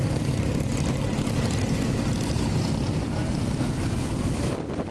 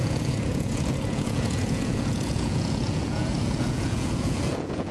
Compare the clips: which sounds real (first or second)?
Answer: first